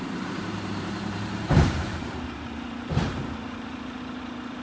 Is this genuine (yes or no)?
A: no